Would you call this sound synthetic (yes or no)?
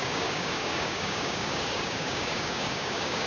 yes